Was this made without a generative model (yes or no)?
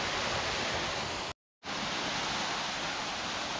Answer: yes